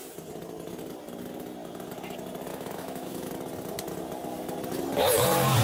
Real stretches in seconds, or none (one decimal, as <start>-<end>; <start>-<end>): 0.0-2.5; 3.3-5.6